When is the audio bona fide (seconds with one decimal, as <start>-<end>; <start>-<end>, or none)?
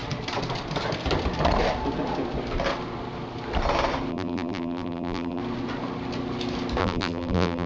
0.0-4.1; 5.4-6.8